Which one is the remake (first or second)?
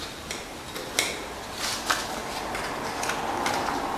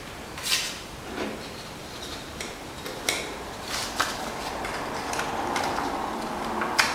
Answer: second